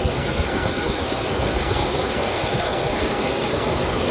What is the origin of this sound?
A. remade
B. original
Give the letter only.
A